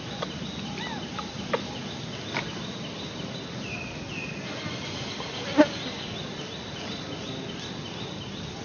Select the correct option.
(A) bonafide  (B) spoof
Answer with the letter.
A